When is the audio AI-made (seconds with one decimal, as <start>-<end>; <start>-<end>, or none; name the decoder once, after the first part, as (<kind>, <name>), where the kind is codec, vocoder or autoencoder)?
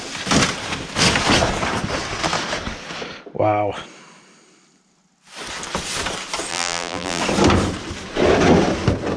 6.5-7.2 (vocoder, BigVGAN v2)